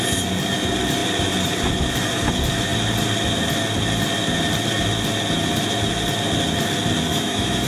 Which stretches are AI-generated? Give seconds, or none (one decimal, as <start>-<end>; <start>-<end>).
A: 7.1-7.7